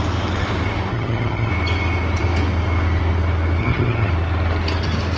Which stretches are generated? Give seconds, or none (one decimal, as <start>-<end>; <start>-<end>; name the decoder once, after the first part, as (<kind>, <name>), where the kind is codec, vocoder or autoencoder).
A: 0.9-1.5 (vocoder, HiFi-GAN); 3.6-4.1